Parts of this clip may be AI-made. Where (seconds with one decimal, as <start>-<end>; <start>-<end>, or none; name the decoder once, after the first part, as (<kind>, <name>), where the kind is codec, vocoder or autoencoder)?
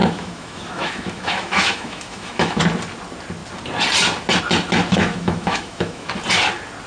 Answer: 0.0-2.6 (autoencoder, DAC-VAE); 4.9-6.1